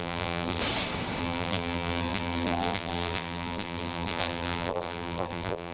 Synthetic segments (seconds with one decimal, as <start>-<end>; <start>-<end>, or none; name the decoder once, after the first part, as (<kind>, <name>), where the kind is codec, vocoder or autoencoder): 0.0-0.6 (vocoder, BigVGAN v2); 1.2-5.7

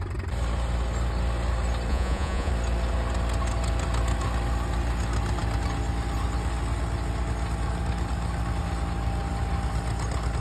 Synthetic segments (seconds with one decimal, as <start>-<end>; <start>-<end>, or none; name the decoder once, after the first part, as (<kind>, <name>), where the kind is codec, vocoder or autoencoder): 1.9-2.5 (vocoder, Vocos)

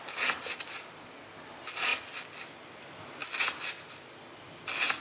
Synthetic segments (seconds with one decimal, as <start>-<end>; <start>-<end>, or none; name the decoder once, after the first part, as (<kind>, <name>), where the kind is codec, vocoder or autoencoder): none

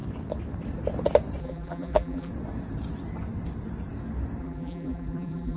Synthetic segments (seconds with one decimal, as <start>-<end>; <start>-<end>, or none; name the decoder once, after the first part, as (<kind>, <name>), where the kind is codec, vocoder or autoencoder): 1.4-2.3 (vocoder, BigVGAN v2); 4.4-5.6